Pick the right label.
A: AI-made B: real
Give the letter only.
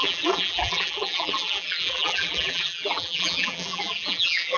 A